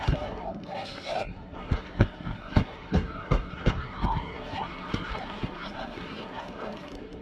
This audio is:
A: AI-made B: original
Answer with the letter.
A